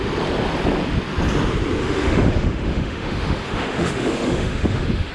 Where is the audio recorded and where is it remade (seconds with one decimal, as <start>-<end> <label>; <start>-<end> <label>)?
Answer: 0.0-1.8 recorded; 1.8-5.1 remade